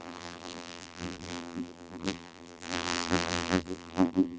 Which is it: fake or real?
fake